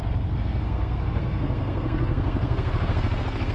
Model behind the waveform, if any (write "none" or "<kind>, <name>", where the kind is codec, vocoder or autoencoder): codec, SNAC